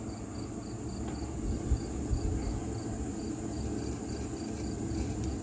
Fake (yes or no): no